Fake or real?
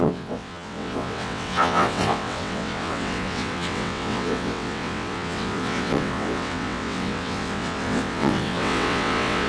fake